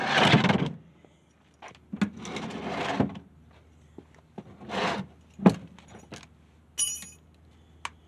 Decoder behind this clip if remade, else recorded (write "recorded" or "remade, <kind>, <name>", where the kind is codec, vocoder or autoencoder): recorded